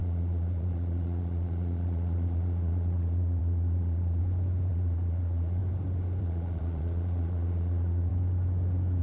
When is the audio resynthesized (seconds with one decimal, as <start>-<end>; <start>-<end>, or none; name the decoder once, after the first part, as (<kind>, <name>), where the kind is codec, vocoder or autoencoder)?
0.0-4.2 (vocoder, Vocos); 4.7-5.6; 6.2-8.1